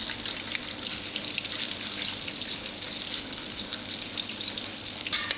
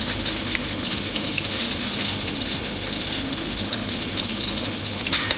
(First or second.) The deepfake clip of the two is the second